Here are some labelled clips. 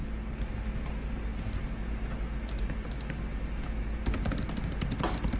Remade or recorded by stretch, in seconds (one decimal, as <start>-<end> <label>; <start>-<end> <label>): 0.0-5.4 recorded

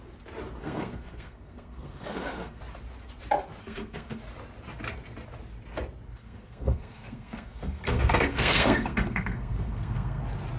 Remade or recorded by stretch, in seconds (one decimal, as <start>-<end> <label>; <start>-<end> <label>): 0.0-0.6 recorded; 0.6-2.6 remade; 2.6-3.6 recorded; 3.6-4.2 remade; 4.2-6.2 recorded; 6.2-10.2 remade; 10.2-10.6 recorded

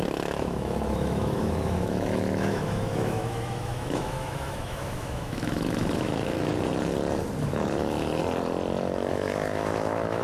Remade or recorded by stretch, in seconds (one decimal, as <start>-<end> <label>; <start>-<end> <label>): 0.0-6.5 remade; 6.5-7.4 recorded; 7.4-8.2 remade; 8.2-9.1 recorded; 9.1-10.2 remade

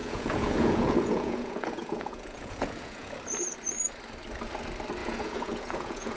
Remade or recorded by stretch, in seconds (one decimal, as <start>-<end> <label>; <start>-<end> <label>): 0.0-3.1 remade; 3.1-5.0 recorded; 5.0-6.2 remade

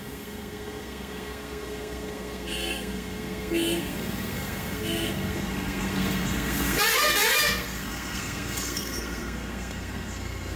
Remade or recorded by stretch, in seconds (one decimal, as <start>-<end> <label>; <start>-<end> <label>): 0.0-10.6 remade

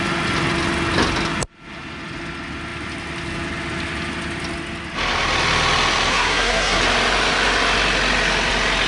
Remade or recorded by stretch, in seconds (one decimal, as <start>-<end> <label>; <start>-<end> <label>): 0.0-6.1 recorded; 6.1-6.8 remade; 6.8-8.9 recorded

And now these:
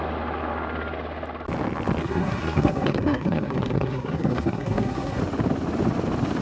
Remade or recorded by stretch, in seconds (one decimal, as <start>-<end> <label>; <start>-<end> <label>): 0.0-2.0 recorded; 2.0-5.2 remade; 5.2-6.4 recorded